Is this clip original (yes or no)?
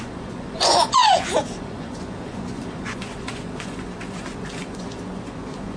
no